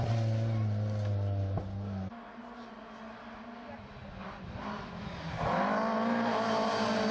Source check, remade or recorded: recorded